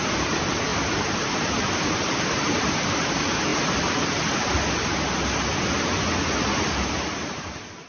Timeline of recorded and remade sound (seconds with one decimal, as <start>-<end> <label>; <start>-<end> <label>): 0.0-0.7 recorded; 0.7-3.1 remade; 3.1-7.9 recorded